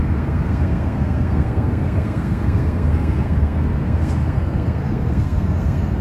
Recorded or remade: remade